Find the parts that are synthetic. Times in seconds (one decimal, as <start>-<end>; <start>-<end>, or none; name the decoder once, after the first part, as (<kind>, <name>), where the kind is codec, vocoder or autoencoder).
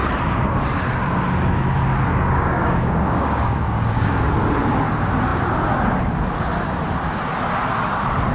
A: 2.1-4.1 (codec, DAC)